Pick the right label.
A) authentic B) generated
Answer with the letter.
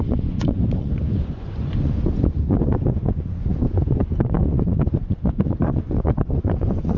B